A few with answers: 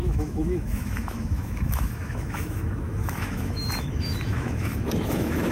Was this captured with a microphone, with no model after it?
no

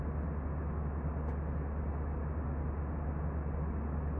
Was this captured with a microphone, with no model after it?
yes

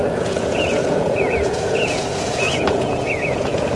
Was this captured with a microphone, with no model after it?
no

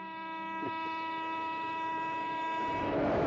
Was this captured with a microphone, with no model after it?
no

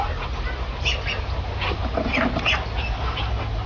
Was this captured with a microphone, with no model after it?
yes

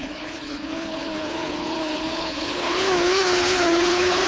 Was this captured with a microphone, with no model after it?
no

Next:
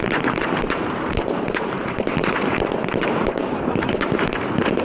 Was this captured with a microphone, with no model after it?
no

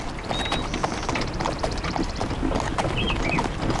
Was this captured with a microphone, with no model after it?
yes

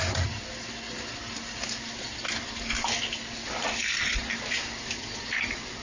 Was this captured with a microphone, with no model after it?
yes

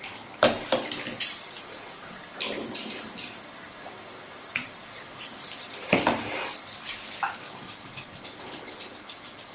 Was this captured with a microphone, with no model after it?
yes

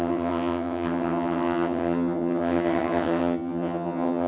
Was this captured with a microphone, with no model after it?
no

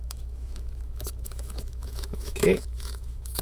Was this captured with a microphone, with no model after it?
no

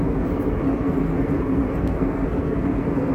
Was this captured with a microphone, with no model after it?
no